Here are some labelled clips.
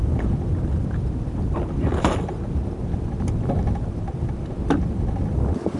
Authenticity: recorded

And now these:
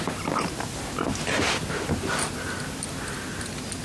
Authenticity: recorded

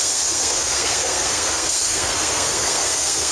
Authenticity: remade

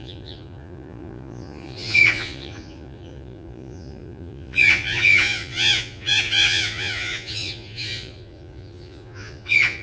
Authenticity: remade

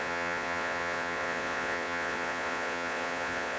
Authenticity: remade